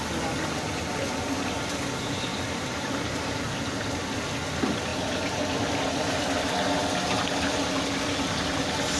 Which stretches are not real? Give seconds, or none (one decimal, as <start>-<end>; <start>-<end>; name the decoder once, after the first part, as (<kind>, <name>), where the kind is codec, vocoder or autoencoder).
2.3-4.0 (vocoder, BigVGAN v2); 4.9-6.2